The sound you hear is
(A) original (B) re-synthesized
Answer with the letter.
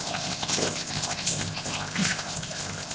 B